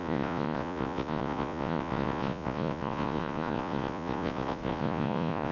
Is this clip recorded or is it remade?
remade